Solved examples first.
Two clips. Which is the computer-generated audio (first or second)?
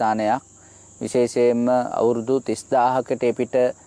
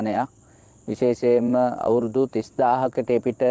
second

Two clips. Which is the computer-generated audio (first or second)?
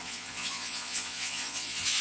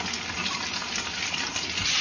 first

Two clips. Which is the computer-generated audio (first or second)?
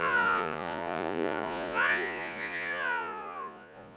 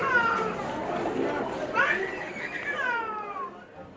first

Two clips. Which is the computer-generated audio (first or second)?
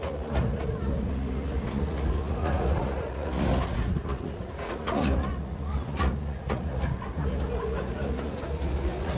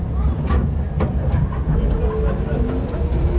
first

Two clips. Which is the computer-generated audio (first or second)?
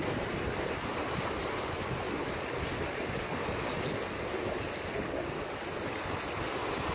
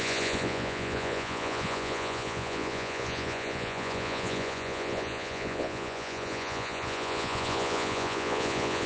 second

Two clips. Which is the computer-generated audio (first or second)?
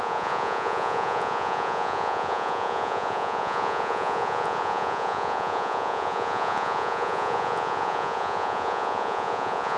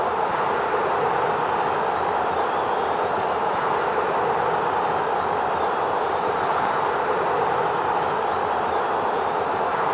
first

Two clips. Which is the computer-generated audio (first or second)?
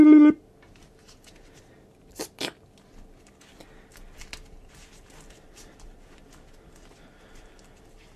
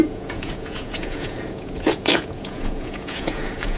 second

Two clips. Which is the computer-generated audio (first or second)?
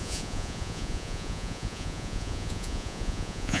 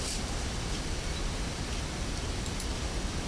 first